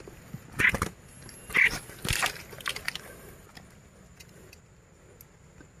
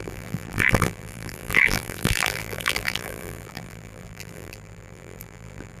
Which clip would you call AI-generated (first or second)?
second